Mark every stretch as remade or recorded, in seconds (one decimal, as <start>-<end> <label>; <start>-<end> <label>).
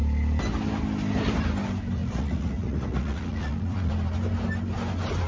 0.0-2.0 recorded; 2.0-3.9 remade; 3.9-5.3 recorded